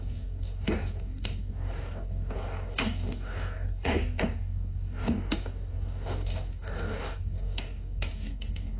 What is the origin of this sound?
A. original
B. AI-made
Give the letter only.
B